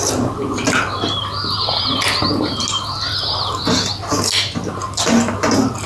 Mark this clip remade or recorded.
recorded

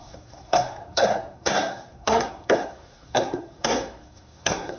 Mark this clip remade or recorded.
remade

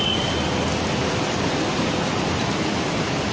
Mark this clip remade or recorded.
recorded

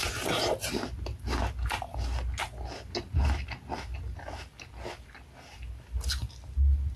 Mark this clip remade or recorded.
recorded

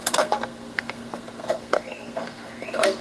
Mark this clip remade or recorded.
remade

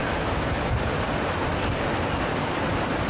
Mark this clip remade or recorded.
recorded